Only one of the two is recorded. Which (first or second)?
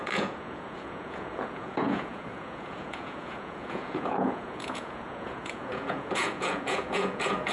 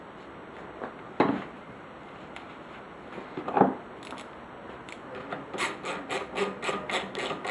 second